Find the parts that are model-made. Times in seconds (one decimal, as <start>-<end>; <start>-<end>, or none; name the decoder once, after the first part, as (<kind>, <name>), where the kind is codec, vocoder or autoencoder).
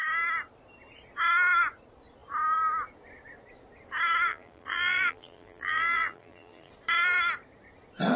4.3-6.7 (vocoder, BigVGAN v2)